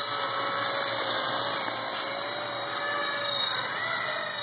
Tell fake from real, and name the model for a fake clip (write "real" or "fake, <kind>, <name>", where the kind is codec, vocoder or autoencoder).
real